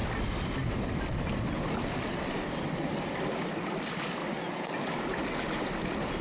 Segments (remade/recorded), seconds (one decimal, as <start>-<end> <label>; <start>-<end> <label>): 0.0-6.2 recorded